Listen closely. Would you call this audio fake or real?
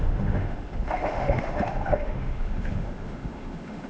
fake